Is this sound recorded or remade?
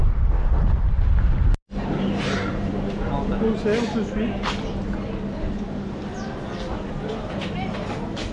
recorded